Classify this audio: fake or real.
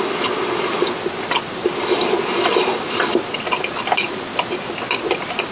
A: real